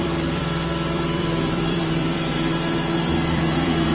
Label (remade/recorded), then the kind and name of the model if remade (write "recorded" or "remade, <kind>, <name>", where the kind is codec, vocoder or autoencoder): remade, vocoder, BigVGAN v2